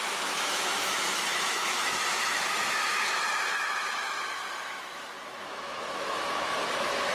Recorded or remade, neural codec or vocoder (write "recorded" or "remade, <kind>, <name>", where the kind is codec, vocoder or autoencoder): remade, autoencoder, DAC-VAE